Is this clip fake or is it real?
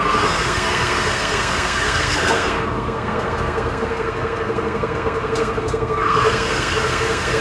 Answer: fake